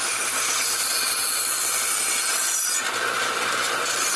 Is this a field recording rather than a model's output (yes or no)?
no